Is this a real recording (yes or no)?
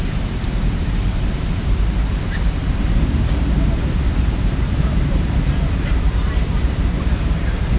no